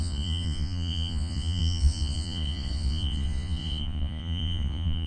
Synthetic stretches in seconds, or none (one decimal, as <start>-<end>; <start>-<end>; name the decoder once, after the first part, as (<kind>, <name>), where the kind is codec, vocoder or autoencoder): 0.0-5.1 (vocoder, Vocos)